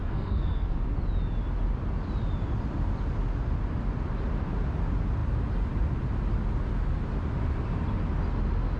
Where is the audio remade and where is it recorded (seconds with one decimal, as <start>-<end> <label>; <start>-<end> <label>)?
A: 0.0-0.8 remade; 0.8-8.8 recorded